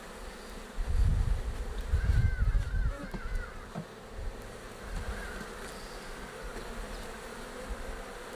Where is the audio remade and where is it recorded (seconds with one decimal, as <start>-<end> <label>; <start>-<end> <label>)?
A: 0.0-8.3 recorded